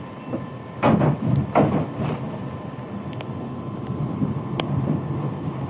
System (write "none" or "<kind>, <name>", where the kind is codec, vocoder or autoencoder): none